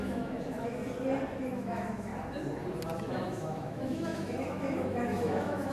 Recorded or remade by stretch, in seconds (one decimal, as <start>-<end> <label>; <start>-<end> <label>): 0.0-0.8 remade; 0.8-1.5 recorded; 1.5-2.1 remade; 2.1-3.0 recorded; 3.0-5.7 remade